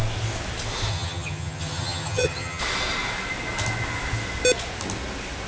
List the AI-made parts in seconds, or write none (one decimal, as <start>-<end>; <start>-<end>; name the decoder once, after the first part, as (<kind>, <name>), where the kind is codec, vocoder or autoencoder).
0.9-2.6 (vocoder, HiFi-GAN)